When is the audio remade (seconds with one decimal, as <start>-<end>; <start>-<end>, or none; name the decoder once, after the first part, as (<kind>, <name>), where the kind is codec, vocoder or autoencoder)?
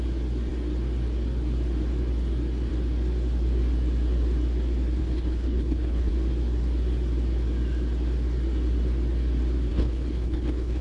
5.0-6.1 (codec, HILCodec); 9.7-10.8